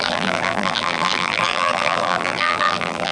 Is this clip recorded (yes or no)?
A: no